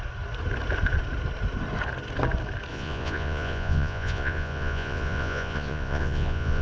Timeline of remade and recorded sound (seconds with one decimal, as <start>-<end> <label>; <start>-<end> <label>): 0.0-2.7 recorded; 2.7-6.6 remade